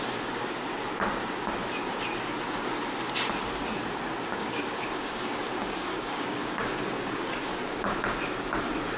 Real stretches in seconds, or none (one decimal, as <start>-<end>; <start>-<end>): 0.0-4.3; 7.9-9.0